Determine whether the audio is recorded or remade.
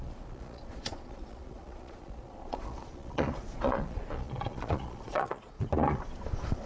remade